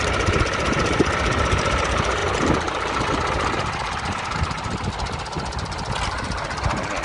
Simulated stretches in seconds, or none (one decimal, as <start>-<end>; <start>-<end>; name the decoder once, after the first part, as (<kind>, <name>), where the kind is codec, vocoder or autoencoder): none